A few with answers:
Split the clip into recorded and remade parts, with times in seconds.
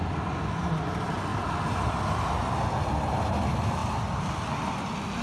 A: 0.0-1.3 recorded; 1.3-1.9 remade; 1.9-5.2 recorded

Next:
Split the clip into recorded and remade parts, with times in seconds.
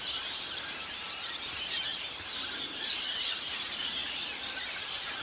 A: 0.0-5.2 remade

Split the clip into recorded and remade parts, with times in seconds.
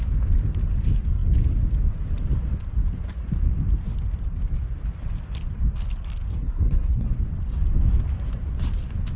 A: 0.0-6.3 recorded; 6.3-7.1 remade; 7.1-9.2 recorded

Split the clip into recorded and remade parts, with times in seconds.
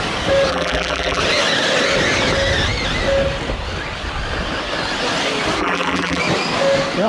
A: 0.0-0.5 recorded; 0.5-1.2 remade; 1.2-5.6 recorded; 5.6-6.2 remade; 6.2-7.1 recorded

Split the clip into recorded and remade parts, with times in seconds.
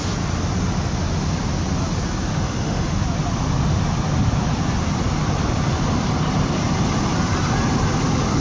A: 0.0-2.3 recorded; 2.3-3.0 remade; 3.0-8.4 recorded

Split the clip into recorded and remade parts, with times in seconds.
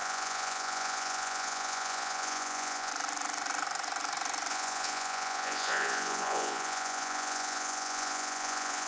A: 0.0-2.9 remade; 2.9-4.5 recorded; 4.5-8.9 remade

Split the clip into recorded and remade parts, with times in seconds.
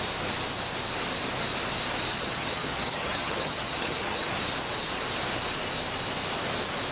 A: 0.0-2.1 recorded; 2.1-4.3 remade; 4.3-6.9 recorded